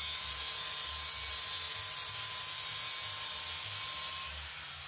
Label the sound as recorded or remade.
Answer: recorded